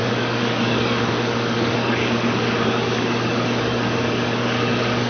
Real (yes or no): no